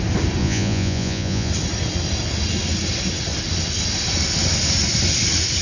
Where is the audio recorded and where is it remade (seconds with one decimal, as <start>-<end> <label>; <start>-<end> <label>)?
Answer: 0.0-0.4 recorded; 0.4-1.5 remade; 1.5-5.6 recorded